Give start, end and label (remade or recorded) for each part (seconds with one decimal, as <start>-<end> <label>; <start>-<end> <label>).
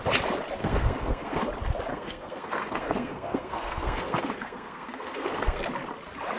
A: 0.0-0.6 recorded; 0.6-1.4 remade; 1.4-1.9 recorded; 1.9-5.7 remade; 5.7-6.4 recorded